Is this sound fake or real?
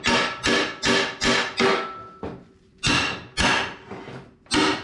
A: real